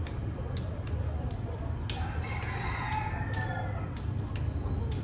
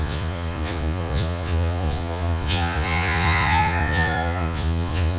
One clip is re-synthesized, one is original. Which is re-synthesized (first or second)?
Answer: second